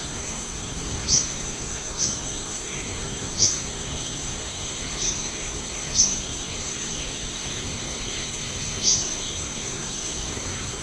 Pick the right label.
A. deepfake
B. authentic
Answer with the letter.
A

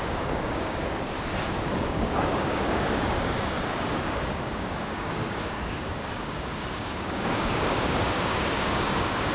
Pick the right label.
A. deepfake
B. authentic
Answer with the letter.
A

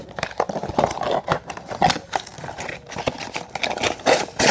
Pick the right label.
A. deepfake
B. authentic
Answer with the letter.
B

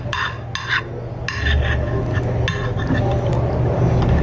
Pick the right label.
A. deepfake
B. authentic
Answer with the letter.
B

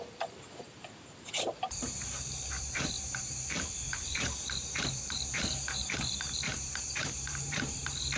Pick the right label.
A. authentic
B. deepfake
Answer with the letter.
B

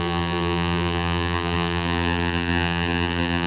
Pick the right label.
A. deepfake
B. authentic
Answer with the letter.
A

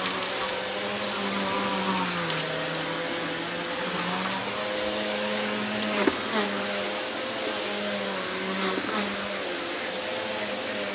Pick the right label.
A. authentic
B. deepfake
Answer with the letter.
A